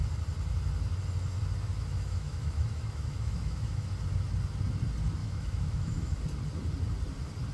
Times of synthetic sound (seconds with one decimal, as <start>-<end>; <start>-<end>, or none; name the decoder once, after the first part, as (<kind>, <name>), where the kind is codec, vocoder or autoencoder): 1.7-3.9 (autoencoder, DAC-VAE); 5.2-6.2